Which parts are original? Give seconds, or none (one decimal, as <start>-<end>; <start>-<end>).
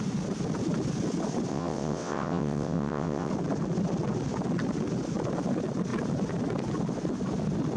0.0-1.5; 3.3-7.8